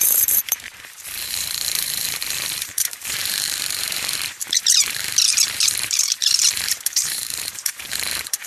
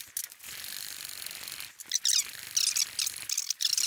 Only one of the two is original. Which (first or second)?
second